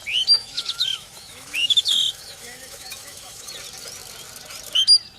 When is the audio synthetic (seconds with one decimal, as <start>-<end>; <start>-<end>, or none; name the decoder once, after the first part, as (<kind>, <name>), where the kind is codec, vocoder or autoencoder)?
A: 0.4-3.5 (autoencoder, DAC-VAE)